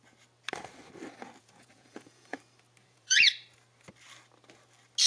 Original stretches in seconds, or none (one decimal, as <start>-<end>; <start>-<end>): 0.0-1.4; 2.4-2.8; 3.3-5.1